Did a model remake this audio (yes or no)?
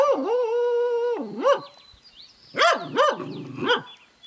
no